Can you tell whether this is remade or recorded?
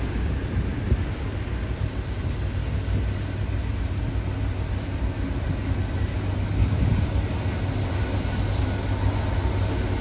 recorded